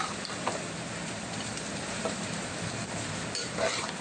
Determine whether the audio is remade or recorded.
remade